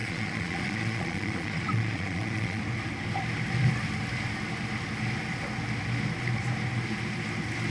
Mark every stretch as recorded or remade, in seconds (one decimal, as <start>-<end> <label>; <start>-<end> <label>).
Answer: 0.0-2.6 remade; 2.6-7.7 recorded